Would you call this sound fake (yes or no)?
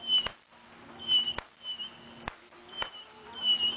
no